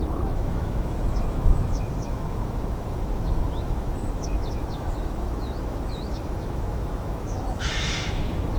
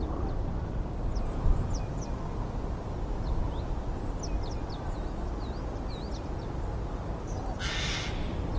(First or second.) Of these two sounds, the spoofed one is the first